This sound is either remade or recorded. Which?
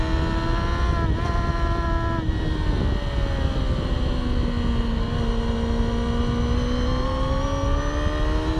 recorded